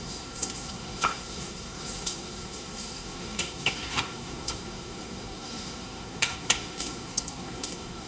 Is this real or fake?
fake